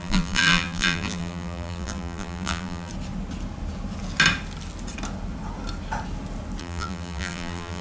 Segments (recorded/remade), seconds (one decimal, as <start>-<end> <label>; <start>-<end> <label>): 0.0-2.9 remade; 2.9-6.6 recorded; 6.6-7.8 remade